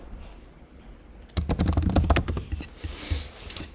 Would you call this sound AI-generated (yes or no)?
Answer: no